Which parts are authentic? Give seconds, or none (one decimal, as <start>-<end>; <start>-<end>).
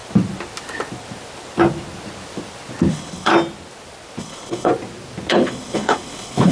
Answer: 0.0-2.9; 3.3-4.2; 4.7-5.3